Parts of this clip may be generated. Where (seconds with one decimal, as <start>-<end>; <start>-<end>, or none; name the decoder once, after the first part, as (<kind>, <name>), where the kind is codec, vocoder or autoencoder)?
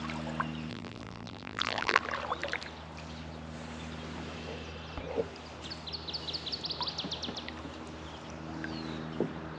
0.7-2.0 (vocoder, BigVGAN v2)